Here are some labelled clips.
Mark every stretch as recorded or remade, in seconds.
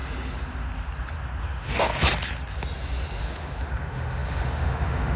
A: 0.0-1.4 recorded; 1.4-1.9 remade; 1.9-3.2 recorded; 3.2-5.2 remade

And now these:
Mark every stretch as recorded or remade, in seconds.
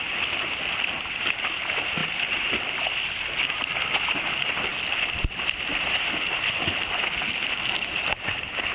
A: 0.0-8.7 recorded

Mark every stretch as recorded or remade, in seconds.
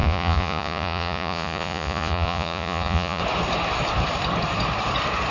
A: 0.0-3.2 remade; 3.2-5.3 recorded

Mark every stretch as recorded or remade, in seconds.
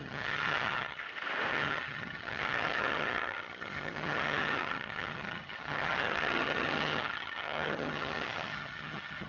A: 0.0-1.0 remade; 1.0-1.5 recorded; 1.5-9.3 remade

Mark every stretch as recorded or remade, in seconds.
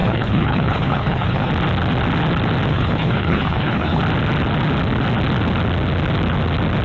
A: 0.0-1.5 remade; 1.5-2.7 recorded; 2.7-4.0 remade; 4.0-6.8 recorded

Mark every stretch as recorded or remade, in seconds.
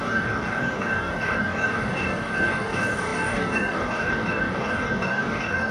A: 0.0-5.7 remade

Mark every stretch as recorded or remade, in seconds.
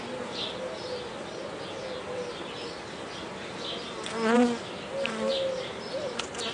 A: 0.0-6.5 recorded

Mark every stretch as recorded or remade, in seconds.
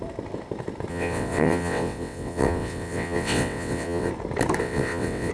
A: 0.0-0.9 recorded; 0.9-4.1 remade; 4.1-4.6 recorded; 4.6-5.3 remade